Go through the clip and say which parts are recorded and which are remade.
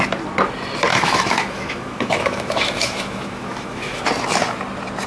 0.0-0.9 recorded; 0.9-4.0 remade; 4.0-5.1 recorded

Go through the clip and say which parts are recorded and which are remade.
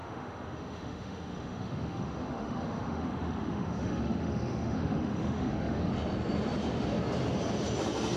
0.0-5.9 remade; 5.9-8.2 recorded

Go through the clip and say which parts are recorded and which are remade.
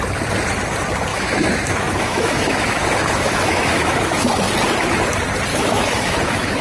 0.0-1.1 recorded; 1.1-4.5 remade; 4.5-5.5 recorded; 5.5-6.6 remade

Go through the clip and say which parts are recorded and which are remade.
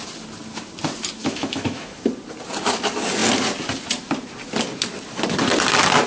0.0-1.2 recorded; 1.2-2.1 remade; 2.1-6.1 recorded